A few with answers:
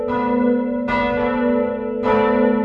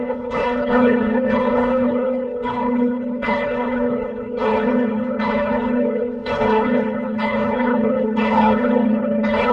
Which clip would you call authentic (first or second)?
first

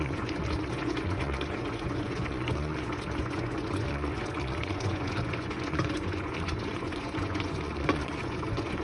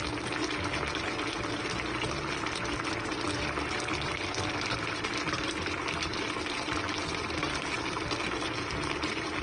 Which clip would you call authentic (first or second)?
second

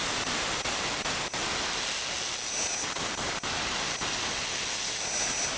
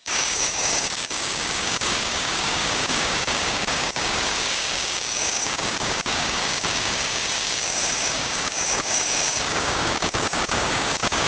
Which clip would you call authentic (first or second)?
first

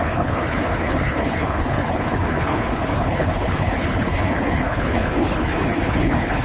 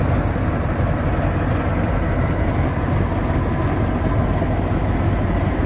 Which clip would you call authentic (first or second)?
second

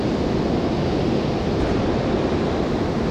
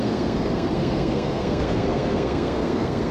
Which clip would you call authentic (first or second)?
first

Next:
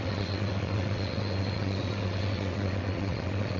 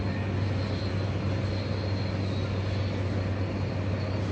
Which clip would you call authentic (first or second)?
second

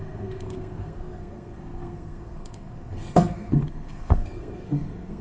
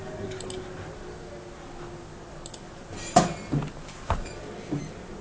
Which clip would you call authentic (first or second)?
second